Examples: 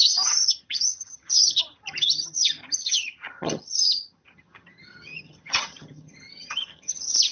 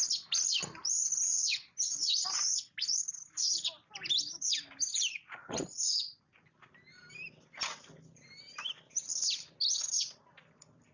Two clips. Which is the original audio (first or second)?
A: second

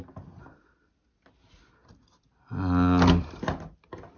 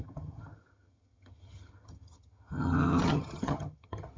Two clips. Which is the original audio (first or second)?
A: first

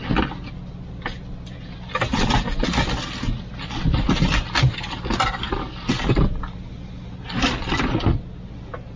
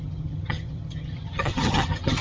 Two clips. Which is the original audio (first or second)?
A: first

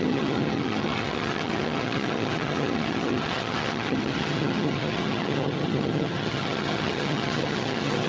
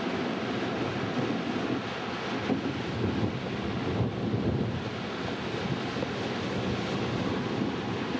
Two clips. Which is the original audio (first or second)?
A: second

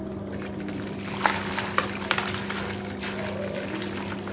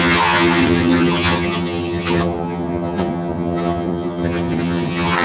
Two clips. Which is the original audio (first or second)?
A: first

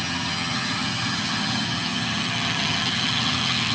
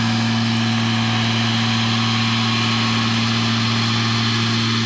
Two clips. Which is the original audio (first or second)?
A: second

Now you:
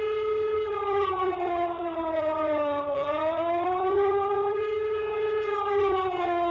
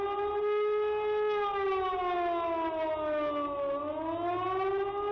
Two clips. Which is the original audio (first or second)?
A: second